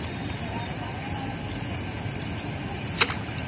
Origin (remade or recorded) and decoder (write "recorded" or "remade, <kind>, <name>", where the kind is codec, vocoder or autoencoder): recorded